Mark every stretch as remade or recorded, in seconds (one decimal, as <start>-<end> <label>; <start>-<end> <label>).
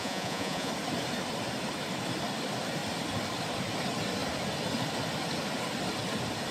0.0-0.7 remade; 0.7-6.5 recorded